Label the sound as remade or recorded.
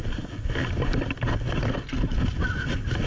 recorded